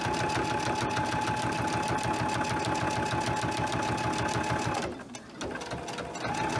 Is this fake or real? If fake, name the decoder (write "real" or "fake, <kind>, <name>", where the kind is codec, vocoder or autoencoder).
real